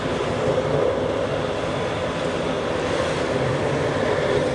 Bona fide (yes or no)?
yes